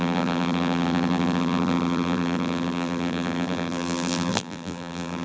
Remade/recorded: remade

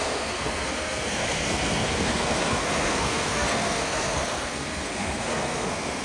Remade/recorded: remade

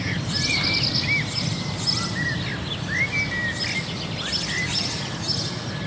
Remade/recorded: recorded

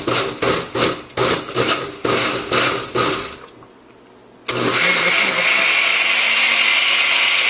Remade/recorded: recorded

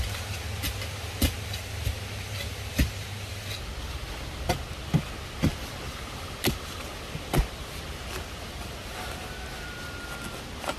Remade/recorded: recorded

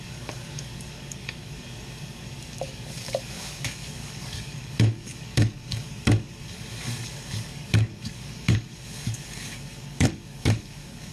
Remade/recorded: remade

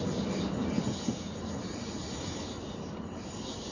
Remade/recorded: recorded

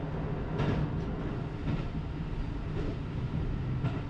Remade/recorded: recorded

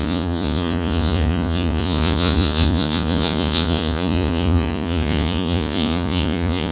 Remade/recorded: remade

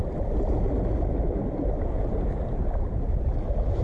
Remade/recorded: recorded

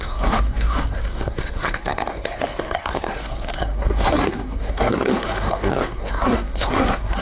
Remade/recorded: remade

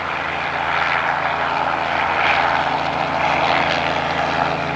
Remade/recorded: recorded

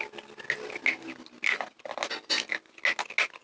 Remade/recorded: recorded